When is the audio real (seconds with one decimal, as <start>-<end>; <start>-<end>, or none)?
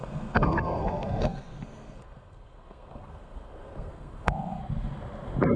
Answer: 4.6-5.6